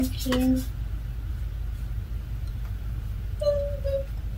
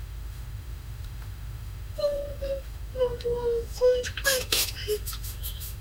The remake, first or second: second